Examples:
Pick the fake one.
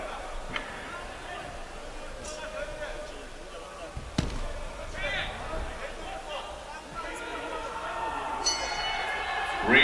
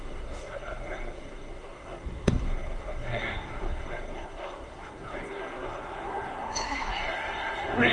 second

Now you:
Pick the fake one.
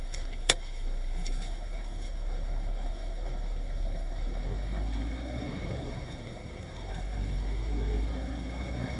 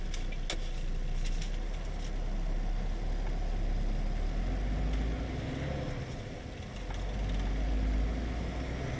first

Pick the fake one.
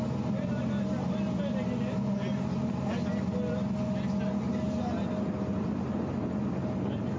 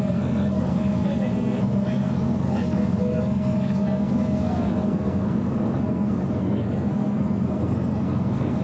second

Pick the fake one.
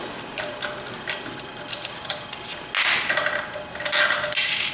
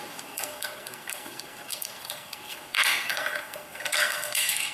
second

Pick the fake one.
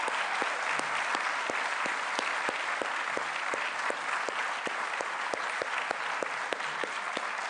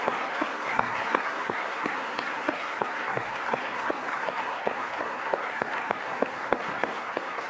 second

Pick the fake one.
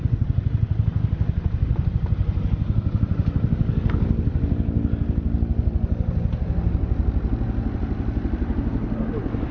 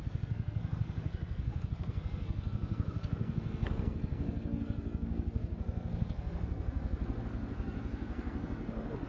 second